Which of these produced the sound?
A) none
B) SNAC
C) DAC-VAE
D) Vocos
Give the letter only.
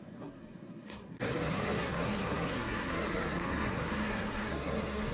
B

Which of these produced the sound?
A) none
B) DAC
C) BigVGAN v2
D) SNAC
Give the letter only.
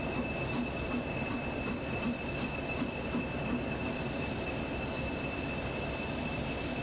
A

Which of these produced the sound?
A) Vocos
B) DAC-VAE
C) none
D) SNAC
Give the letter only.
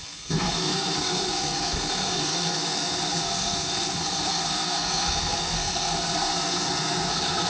D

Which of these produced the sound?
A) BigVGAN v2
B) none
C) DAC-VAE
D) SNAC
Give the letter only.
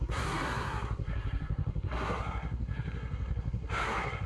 D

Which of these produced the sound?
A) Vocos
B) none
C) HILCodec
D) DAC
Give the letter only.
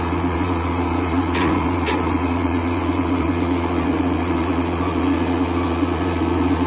A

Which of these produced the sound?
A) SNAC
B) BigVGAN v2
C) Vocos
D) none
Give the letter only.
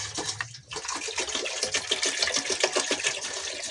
D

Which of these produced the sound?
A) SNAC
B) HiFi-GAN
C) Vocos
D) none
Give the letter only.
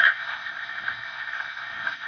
A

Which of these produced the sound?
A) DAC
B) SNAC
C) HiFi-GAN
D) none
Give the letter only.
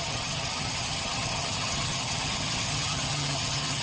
C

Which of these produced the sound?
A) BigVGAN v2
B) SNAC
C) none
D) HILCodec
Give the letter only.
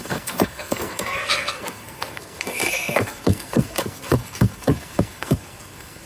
B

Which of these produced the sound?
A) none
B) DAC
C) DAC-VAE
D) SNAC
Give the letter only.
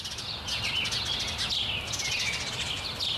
A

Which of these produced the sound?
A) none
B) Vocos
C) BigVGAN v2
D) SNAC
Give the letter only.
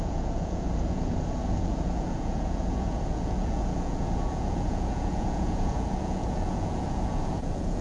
B